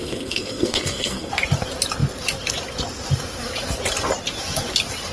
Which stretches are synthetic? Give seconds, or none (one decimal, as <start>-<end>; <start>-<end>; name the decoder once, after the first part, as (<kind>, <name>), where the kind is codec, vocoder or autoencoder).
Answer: 0.0-1.3 (codec, SNAC)